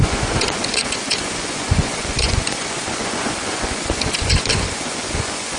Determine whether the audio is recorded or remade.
remade